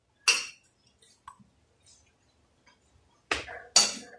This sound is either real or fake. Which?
real